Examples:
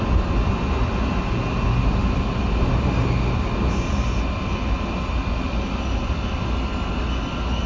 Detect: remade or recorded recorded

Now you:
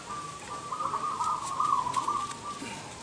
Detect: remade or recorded recorded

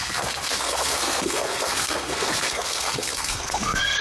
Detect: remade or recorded remade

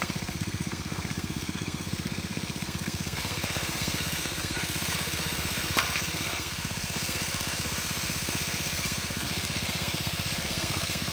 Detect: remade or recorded remade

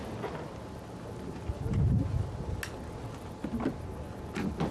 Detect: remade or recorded recorded